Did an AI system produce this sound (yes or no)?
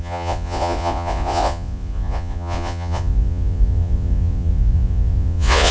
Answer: yes